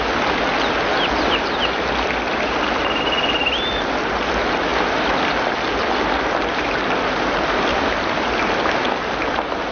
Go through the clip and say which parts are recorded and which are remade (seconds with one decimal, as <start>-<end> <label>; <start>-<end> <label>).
0.0-9.7 recorded